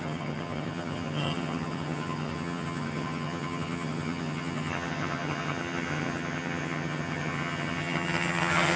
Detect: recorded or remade remade